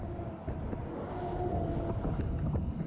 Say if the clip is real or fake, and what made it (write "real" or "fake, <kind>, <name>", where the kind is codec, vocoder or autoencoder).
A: real